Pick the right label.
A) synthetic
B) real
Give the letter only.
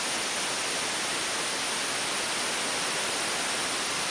B